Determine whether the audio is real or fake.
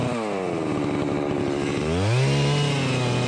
real